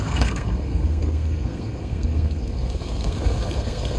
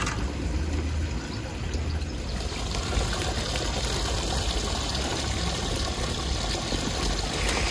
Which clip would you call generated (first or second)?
first